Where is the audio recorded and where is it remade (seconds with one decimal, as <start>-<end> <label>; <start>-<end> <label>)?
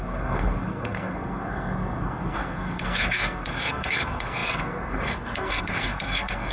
0.0-6.5 remade